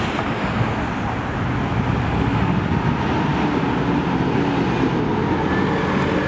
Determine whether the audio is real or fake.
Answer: real